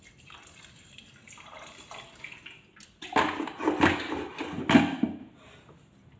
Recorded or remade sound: recorded